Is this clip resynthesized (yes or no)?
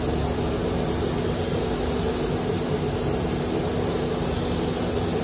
no